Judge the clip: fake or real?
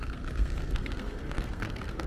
fake